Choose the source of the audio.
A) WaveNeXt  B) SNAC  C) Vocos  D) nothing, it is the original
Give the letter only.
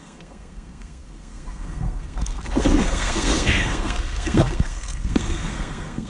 B